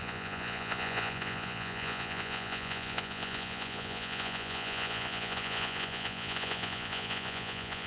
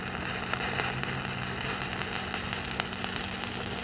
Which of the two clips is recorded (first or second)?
second